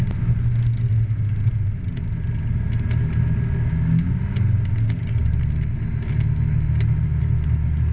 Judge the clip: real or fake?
real